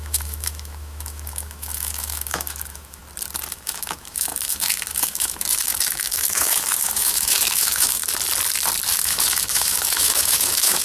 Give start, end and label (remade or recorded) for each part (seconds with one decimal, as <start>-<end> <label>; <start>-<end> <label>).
0.0-3.0 remade; 3.0-3.5 recorded; 3.5-8.0 remade; 8.0-8.9 recorded; 8.9-10.8 remade